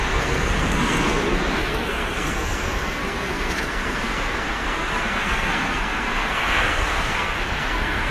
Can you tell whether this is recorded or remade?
remade